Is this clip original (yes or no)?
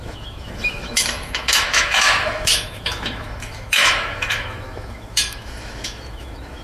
no